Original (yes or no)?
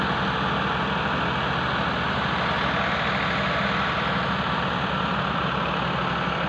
yes